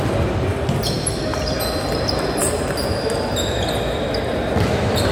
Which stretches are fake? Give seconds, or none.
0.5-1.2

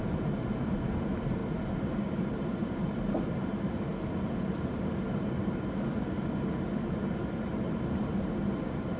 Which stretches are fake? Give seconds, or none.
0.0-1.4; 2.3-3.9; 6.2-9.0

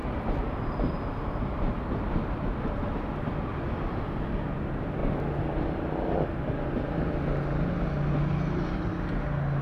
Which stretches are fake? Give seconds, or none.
0.0-1.7; 3.5-4.2